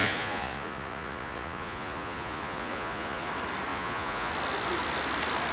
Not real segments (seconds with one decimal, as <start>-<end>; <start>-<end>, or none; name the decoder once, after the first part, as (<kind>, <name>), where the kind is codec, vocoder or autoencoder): 0.0-3.3 (vocoder, Vocos); 3.7-4.3